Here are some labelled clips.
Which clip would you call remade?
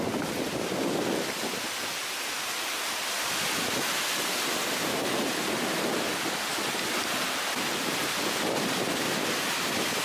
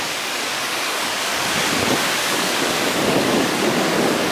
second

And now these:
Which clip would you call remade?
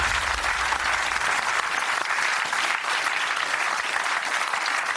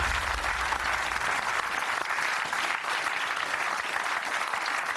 first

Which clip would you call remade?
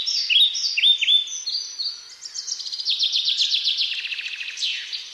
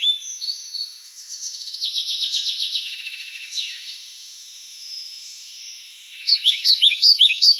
second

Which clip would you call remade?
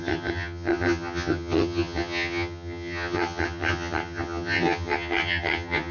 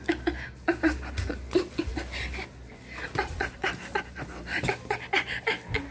first